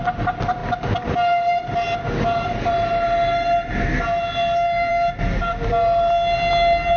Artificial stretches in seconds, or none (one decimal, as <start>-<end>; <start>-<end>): none